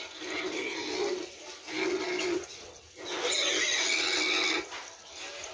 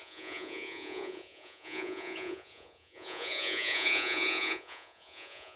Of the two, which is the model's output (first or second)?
second